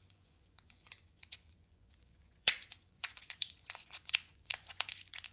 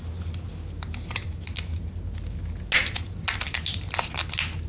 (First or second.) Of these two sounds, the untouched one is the second